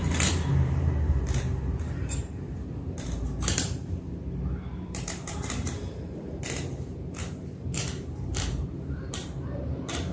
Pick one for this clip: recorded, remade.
remade